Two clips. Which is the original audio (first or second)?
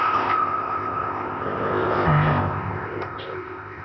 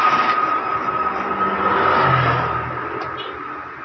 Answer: second